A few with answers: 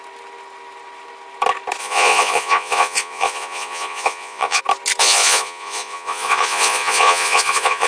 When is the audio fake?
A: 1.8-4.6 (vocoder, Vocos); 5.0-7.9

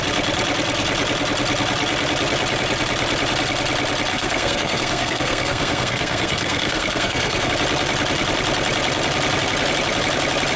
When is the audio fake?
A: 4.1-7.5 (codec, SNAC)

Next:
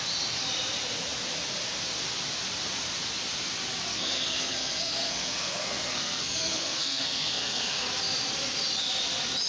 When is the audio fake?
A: 3.9-8.0 (codec, SNAC)